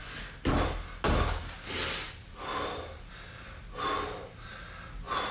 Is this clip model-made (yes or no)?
no